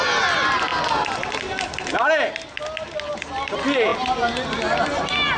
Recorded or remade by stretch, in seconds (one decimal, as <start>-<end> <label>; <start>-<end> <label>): 0.0-5.4 recorded